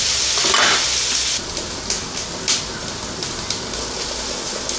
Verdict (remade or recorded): recorded